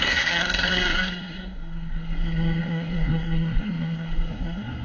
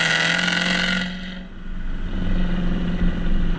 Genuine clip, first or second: second